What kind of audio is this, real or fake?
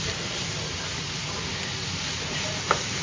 real